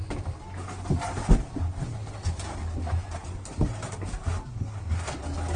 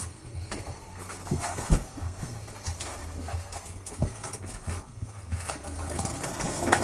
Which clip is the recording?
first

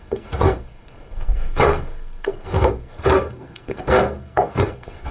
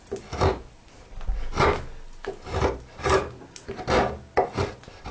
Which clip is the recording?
second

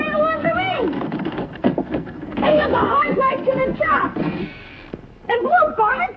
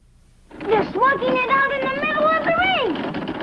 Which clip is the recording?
second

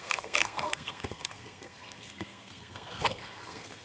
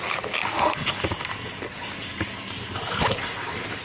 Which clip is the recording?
second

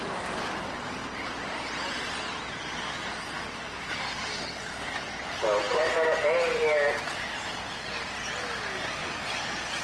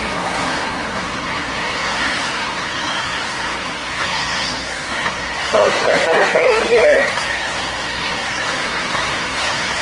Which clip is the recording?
first